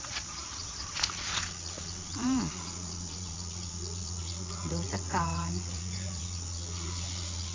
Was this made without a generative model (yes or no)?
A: no